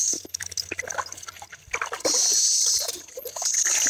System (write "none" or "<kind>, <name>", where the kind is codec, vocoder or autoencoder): none